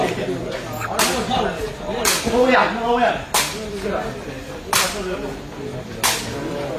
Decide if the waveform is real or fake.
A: real